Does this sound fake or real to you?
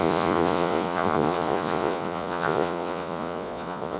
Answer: fake